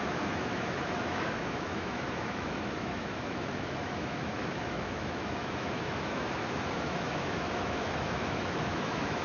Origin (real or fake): fake